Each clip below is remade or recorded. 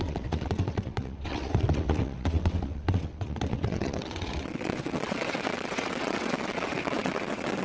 remade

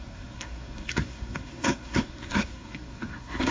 remade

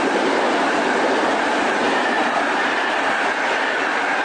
recorded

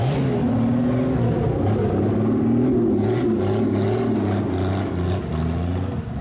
recorded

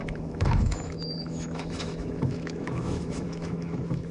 remade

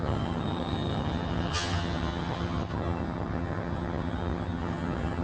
remade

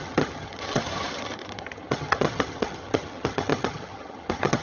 remade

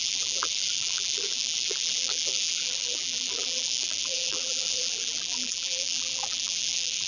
remade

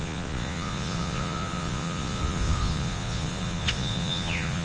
remade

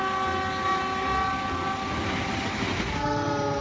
recorded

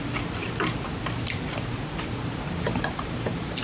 remade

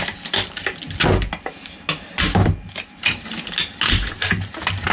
recorded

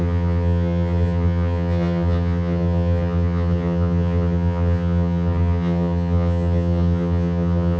remade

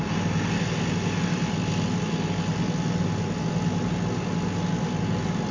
recorded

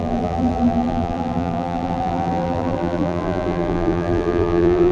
remade